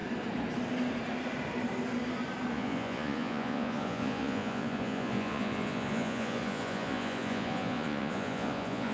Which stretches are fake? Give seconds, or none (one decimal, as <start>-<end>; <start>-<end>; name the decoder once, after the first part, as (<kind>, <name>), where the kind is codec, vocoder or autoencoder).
2.5-8.9 (vocoder, Vocos)